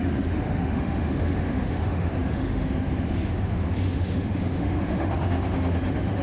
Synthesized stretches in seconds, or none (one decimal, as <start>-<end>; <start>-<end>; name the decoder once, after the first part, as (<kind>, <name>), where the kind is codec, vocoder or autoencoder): 0.0-6.2 (autoencoder, DAC-VAE)